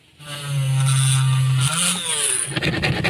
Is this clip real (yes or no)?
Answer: yes